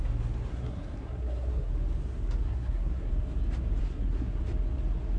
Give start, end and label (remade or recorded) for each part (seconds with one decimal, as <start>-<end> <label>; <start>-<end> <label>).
0.0-0.5 recorded; 0.5-1.7 remade; 1.7-2.4 recorded; 2.4-3.1 remade; 3.1-3.8 recorded; 3.8-4.4 remade; 4.4-5.2 recorded